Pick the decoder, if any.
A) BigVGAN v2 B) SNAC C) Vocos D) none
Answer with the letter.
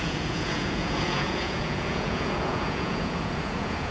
C